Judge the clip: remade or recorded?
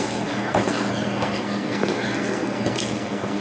remade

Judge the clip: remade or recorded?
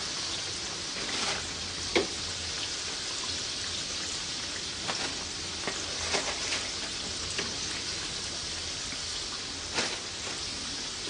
recorded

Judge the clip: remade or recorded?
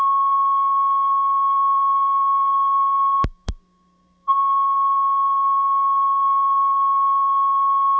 remade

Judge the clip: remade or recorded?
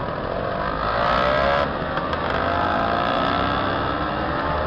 recorded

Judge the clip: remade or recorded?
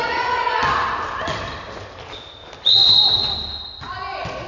recorded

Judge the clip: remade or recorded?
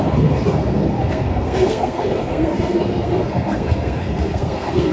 remade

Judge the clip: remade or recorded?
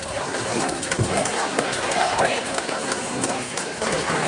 remade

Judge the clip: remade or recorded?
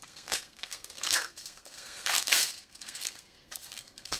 remade